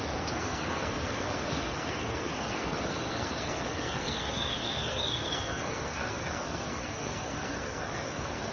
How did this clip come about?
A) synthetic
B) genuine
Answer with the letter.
A